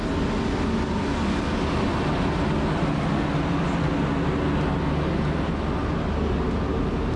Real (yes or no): yes